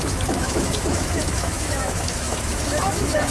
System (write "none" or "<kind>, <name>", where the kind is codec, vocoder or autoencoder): autoencoder, DAC-VAE